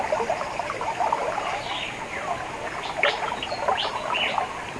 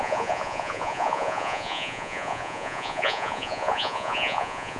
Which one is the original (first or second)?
first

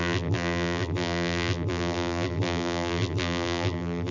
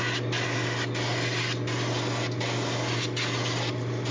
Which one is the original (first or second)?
second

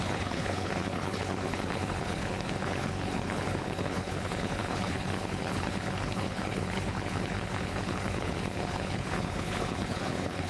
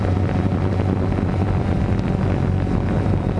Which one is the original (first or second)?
second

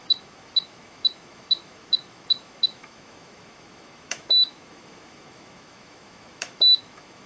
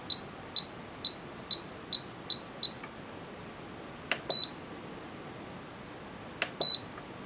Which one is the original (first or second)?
second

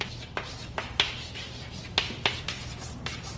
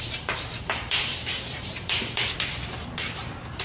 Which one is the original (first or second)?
first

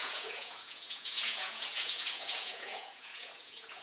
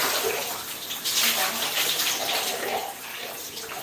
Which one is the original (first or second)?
second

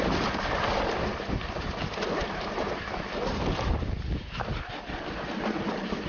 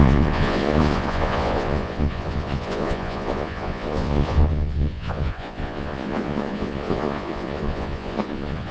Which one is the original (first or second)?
first